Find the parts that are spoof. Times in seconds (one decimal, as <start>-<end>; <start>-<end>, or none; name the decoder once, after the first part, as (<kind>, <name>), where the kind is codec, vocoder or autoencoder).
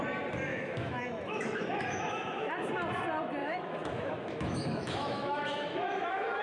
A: 0.5-2.5 (autoencoder, DAC-VAE); 3.4-6.4